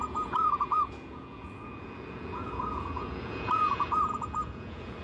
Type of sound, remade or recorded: remade